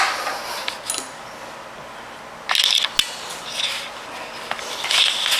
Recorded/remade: recorded